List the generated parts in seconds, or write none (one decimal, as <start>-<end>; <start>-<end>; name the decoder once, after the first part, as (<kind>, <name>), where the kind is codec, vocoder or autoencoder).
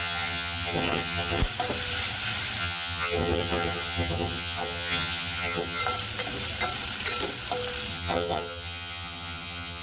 0.0-1.4 (vocoder, HiFi-GAN); 2.6-5.8; 7.9-9.8